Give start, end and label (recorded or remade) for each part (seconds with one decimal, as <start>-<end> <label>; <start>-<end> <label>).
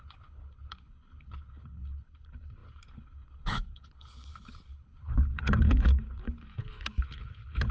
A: 0.0-7.7 remade